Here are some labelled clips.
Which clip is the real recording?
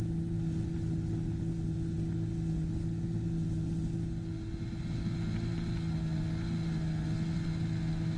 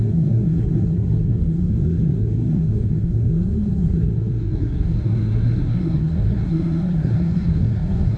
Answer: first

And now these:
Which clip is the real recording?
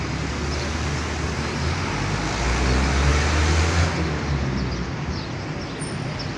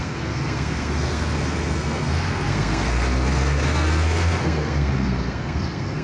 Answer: first